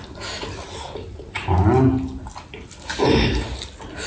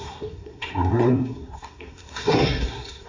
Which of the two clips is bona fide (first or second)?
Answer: first